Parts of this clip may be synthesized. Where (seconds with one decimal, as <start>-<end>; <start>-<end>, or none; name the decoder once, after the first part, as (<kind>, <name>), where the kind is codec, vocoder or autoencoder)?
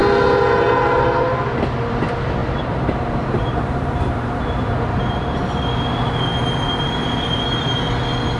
2.4-5.6 (vocoder, BigVGAN v2); 6.3-7.0